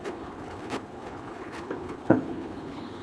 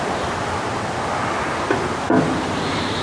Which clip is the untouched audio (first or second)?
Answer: second